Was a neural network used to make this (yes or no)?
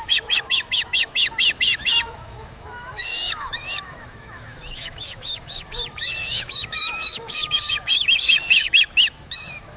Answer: yes